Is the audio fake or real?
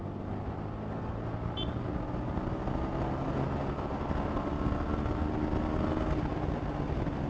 real